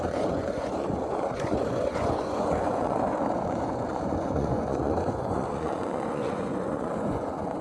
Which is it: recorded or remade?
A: remade